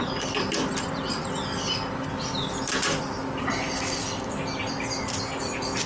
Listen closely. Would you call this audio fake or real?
real